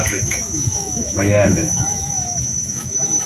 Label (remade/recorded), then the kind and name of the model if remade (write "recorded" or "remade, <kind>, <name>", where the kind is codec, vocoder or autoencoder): remade, autoencoder, DAC-VAE